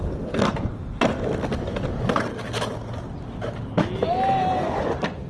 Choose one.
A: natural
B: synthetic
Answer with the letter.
A